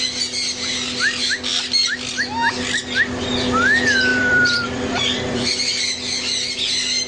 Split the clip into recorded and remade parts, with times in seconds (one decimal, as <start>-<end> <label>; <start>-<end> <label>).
0.0-4.1 recorded; 4.1-5.5 remade; 5.5-7.1 recorded